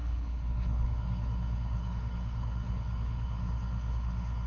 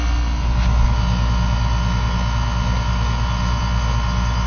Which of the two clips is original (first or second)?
second